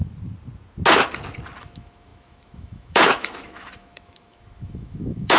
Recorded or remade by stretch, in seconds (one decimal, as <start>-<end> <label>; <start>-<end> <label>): 0.0-1.6 recorded; 1.6-5.4 remade